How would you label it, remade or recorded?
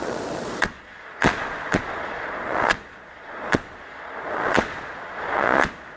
remade